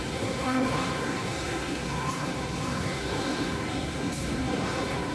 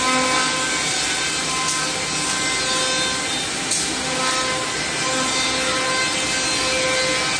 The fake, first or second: first